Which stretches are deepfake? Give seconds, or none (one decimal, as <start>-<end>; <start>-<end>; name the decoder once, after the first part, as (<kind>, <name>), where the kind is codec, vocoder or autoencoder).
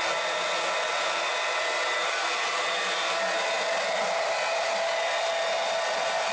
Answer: none